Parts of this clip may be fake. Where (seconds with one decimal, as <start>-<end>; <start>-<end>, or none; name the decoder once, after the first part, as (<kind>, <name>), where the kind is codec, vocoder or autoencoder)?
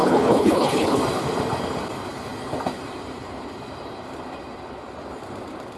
0.0-1.0 (codec, HILCodec)